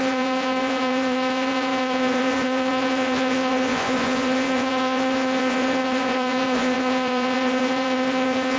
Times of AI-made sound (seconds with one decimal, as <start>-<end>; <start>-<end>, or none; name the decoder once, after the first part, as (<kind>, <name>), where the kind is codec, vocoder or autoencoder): 0.0-8.6 (vocoder, Vocos)